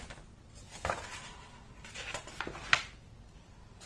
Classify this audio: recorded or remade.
recorded